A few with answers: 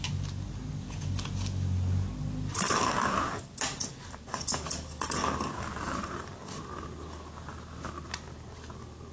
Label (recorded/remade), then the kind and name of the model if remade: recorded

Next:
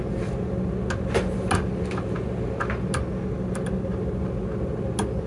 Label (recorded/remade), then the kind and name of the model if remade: recorded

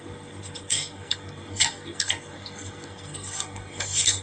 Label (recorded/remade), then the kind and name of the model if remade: remade, codec, SNAC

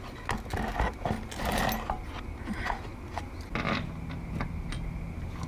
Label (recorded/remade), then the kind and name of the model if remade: recorded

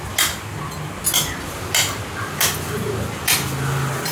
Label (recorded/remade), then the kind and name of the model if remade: recorded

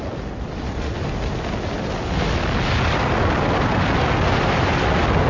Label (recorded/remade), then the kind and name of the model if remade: recorded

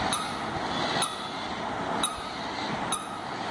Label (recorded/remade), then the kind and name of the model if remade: recorded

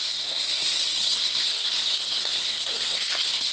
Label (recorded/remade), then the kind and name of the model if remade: remade, codec, SNAC